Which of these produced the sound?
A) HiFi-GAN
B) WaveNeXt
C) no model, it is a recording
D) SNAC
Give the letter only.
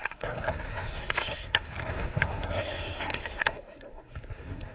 D